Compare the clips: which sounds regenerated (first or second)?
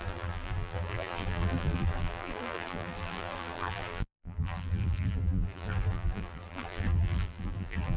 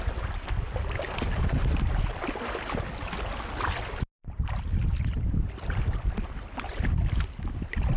first